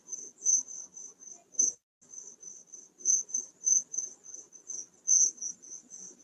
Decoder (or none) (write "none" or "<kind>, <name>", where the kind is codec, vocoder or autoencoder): none